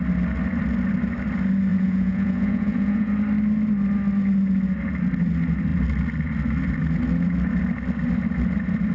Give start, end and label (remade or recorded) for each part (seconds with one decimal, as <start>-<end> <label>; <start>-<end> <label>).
0.0-1.7 recorded; 1.7-3.1 remade; 3.1-8.9 recorded